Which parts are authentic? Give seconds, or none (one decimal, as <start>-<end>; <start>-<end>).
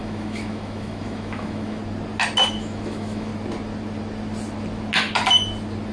1.8-2.5; 3.3-5.9